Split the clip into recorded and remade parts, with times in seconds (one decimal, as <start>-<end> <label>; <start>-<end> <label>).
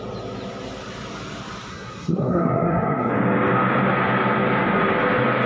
0.0-1.7 recorded; 1.7-3.1 remade; 3.1-5.5 recorded